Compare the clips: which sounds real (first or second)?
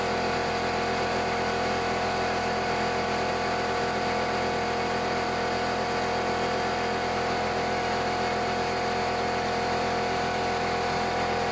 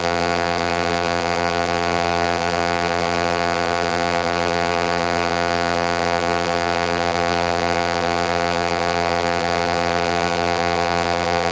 first